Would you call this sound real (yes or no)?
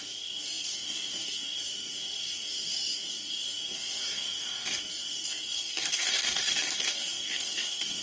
no